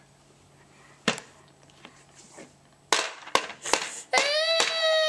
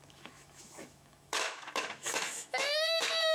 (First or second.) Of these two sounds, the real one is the first